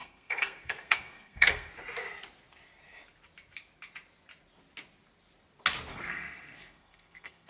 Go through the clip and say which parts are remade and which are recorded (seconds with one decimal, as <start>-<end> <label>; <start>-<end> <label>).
0.0-1.7 remade; 1.7-5.9 recorded; 5.9-7.5 remade